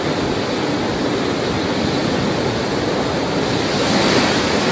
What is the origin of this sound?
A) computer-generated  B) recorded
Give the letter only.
B